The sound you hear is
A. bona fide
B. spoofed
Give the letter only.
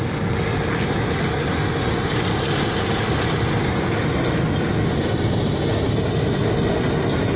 A